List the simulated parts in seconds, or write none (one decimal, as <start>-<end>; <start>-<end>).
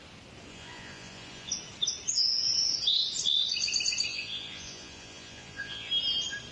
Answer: 0.5-1.5; 4.1-5.9